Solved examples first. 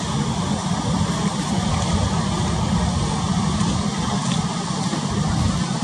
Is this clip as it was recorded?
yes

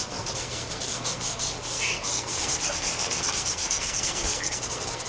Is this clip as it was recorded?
no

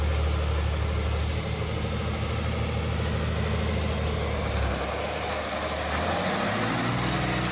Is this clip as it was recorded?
yes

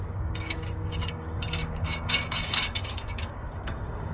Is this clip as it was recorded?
no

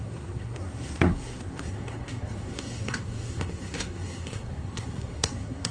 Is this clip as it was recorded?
no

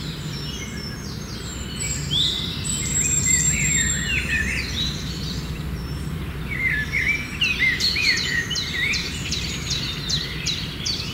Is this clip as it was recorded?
no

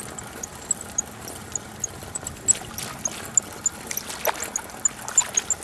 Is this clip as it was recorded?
yes